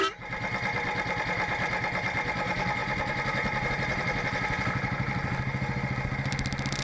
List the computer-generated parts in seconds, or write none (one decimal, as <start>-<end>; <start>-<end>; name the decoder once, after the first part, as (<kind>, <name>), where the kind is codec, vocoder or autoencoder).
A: none

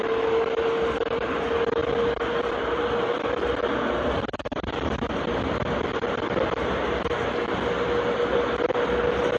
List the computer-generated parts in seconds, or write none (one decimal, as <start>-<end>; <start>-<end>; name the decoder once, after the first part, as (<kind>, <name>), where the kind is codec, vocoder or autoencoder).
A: none

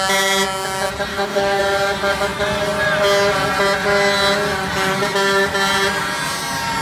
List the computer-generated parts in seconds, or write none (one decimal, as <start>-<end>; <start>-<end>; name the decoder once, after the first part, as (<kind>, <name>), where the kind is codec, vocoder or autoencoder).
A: 1.1-1.6 (codec, DAC)

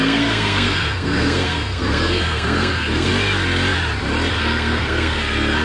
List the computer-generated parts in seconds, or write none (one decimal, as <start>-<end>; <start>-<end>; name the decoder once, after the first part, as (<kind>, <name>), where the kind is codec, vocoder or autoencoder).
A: 0.0-3.1 (codec, SNAC); 4.3-5.6

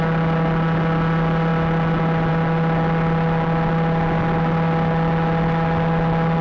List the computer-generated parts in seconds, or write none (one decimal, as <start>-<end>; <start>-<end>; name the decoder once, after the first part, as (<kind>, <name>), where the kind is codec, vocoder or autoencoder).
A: none

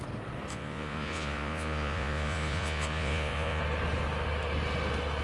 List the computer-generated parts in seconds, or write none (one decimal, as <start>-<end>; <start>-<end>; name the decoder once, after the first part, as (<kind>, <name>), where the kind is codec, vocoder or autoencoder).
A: 0.5-3.6 (vocoder, Vocos)